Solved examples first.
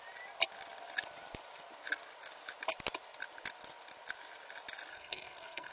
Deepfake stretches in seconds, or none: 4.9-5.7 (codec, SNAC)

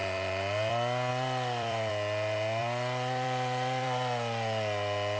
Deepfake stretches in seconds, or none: 0.0-0.7 (vocoder, BigVGAN v2); 1.1-1.9; 2.6-5.2